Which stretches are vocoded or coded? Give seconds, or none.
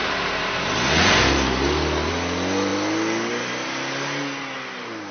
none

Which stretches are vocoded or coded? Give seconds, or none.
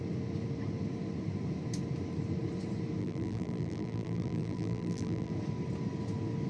3.0-5.3 (vocoder, BigVGAN v2)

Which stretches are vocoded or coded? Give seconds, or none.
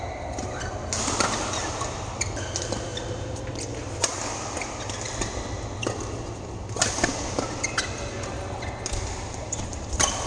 none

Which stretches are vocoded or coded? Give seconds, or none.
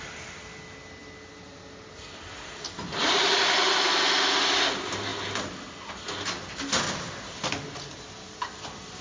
none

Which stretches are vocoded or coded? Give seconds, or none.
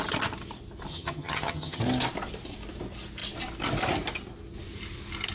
0.9-1.8 (vocoder, HiFi-GAN)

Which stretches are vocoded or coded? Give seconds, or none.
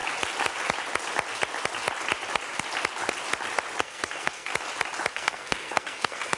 3.8-4.5 (codec, SNAC); 5.1-6.4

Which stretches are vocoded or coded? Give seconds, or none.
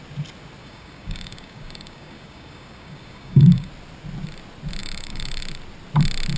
0.6-3.7 (codec, DAC); 4.8-5.4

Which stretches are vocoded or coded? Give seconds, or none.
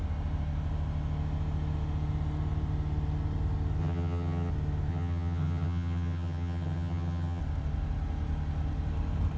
3.8-4.5 (vocoder, HiFi-GAN); 4.9-7.4